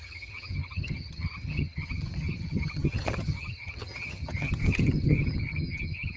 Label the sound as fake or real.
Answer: fake